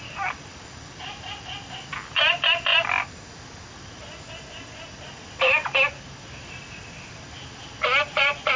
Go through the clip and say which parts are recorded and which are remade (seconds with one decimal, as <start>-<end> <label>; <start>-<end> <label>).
0.0-2.7 remade; 2.7-6.4 recorded; 6.4-8.6 remade